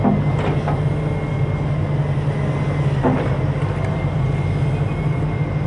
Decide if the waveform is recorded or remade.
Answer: recorded